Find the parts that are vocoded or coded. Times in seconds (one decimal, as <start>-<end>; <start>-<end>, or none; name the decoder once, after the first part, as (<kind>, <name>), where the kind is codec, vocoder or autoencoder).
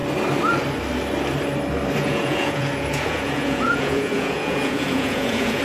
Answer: 2.0-5.6 (vocoder, Vocos)